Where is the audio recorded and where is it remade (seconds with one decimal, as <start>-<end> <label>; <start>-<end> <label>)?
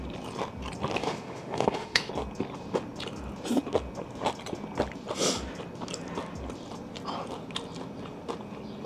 0.0-1.0 recorded; 1.0-2.1 remade; 2.1-8.9 recorded